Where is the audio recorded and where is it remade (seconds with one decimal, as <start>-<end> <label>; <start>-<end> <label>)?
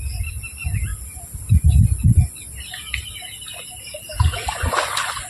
0.0-5.3 recorded